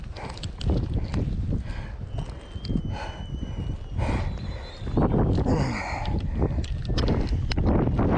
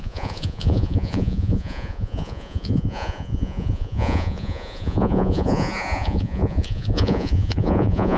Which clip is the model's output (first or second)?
second